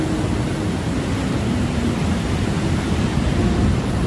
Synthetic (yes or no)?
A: yes